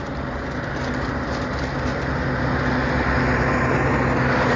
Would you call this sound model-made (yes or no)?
no